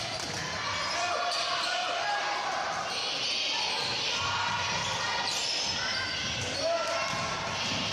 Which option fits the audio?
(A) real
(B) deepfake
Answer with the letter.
A